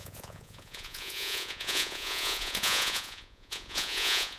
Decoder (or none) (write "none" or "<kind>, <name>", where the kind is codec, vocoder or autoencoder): vocoder, Vocos